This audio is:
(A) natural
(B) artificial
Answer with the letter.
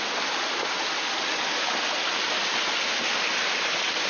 A